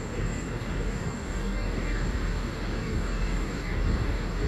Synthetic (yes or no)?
yes